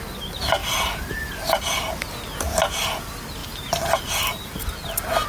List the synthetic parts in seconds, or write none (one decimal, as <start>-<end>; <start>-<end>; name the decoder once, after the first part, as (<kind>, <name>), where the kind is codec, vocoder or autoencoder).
0.6-1.3 (vocoder, BigVGAN v2); 3.4-4.6